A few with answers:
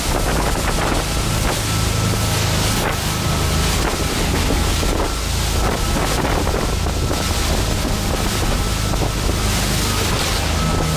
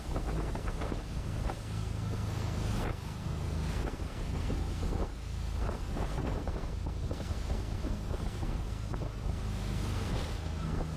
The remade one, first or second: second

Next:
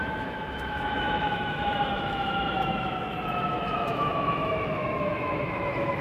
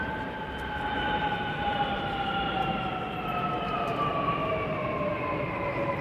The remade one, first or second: first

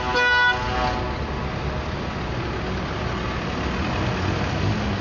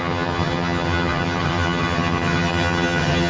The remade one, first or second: second